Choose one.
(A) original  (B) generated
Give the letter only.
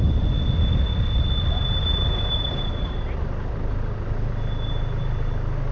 A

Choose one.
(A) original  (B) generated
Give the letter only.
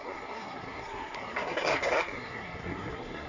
B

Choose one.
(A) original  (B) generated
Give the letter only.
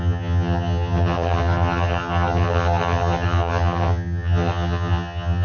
B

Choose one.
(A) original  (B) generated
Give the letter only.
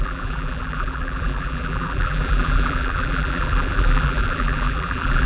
B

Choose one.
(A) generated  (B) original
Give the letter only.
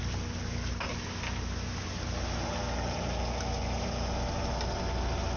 B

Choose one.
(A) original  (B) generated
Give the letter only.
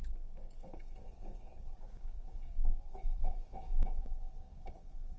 B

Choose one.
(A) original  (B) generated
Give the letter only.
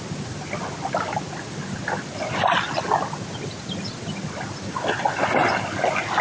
A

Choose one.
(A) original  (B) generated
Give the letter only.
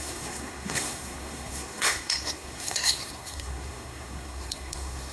B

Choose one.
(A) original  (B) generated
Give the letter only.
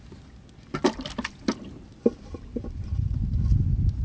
A